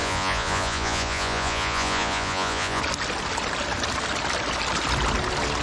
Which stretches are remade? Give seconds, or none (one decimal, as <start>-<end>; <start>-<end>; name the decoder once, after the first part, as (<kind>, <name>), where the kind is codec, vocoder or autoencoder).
0.0-2.8 (vocoder, Vocos)